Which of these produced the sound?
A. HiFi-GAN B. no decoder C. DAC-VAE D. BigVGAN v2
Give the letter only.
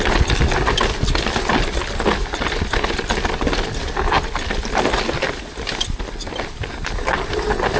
B